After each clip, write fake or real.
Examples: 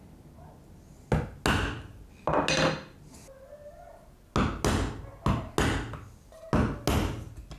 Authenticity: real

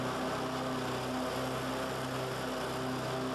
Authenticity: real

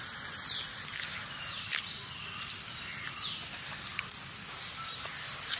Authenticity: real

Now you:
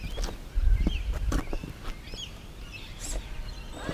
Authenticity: real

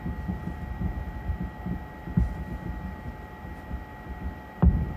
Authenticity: real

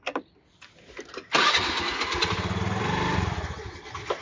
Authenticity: real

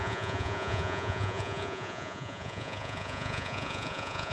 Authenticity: fake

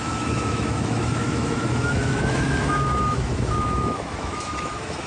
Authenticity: fake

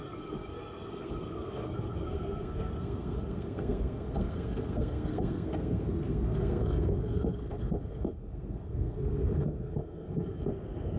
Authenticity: fake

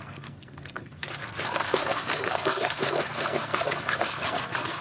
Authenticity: fake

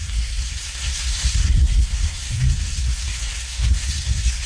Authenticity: fake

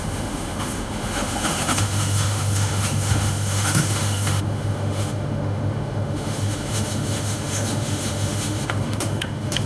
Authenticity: fake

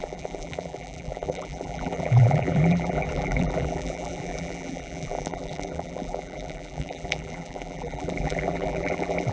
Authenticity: fake